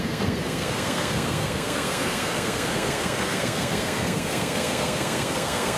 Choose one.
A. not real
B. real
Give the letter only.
A